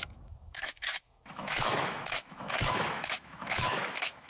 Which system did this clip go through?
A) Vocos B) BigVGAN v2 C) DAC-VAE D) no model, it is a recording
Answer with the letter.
C